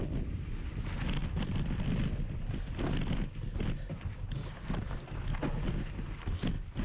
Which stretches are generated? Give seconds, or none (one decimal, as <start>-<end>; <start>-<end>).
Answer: 1.2-2.9